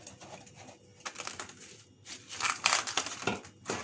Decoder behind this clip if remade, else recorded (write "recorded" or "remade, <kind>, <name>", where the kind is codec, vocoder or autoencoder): recorded